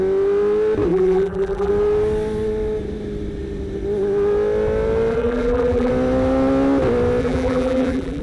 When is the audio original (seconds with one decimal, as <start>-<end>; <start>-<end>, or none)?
0.0-0.9; 1.7-5.1; 5.9-7.2